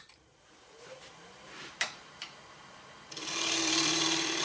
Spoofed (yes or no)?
yes